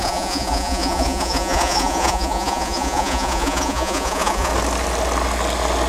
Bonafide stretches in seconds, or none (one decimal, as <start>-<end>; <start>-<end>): 4.5-5.9